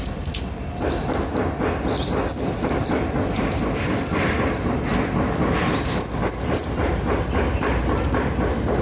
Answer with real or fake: real